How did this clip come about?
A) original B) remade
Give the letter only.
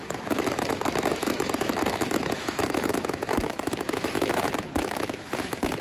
B